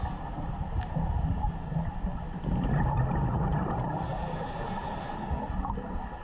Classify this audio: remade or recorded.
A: recorded